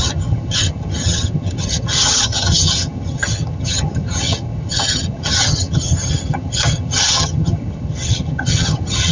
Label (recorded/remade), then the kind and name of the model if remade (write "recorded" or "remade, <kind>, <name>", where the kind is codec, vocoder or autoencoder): remade, vocoder, HiFi-GAN